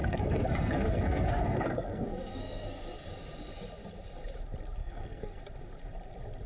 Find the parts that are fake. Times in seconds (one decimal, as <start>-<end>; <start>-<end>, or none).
0.0-3.1; 4.8-5.4